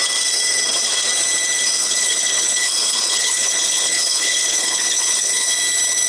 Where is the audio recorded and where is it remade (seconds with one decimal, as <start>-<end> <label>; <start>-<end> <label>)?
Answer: 0.0-1.8 recorded; 1.8-5.5 remade; 5.5-6.1 recorded